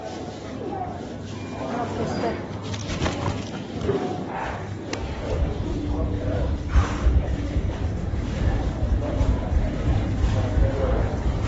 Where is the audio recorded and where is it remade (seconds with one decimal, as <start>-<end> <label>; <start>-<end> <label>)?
0.0-6.8 recorded; 6.8-9.7 remade; 9.7-11.5 recorded